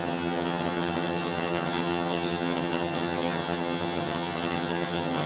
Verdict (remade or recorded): remade